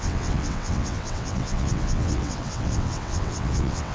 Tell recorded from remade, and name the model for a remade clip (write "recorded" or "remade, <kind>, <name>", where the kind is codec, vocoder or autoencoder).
remade, vocoder, WaveNeXt